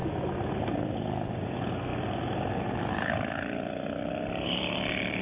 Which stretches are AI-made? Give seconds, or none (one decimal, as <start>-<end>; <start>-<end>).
none